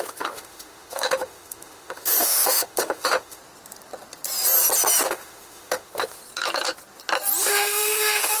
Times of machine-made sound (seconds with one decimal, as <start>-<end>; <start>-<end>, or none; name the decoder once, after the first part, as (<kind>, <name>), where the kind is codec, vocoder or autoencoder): 0.0-3.4 (autoencoder, DAC-VAE); 5.0-6.2; 7.4-8.4